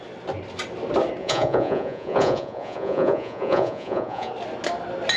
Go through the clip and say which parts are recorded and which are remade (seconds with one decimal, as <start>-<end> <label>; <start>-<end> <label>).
0.0-1.2 recorded; 1.2-4.3 remade; 4.3-5.2 recorded